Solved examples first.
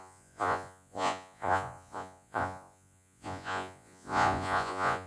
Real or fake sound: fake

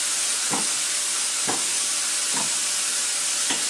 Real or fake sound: real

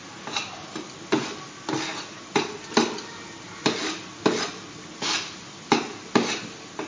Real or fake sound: real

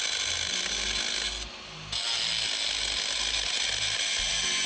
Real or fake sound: real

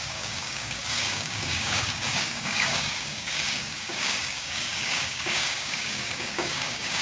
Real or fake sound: fake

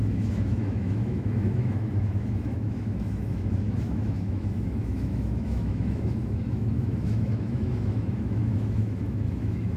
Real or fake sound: fake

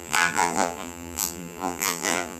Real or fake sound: fake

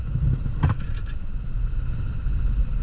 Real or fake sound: real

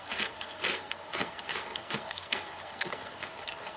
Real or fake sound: fake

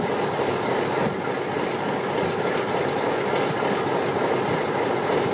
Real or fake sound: real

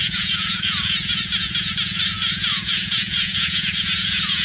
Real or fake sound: fake